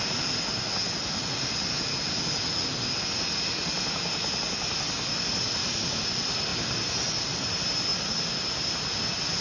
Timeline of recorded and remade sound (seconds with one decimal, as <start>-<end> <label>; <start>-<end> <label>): 0.0-9.4 recorded